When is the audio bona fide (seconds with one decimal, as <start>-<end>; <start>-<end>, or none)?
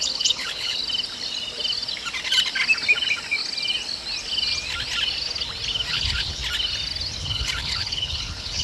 0.8-5.9; 6.4-7.2